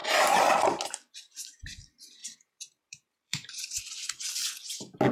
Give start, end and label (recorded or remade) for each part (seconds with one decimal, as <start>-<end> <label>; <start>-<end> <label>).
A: 0.0-0.8 remade; 0.8-2.2 recorded; 2.2-3.8 remade; 3.8-5.1 recorded